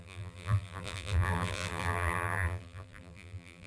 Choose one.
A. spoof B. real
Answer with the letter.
A